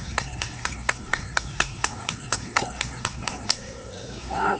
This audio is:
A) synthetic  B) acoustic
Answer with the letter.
A